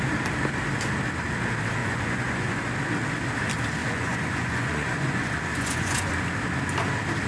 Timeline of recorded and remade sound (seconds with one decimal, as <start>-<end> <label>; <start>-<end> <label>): 0.0-1.8 recorded; 1.8-2.6 remade; 2.6-3.8 recorded; 3.8-6.1 remade; 6.1-7.3 recorded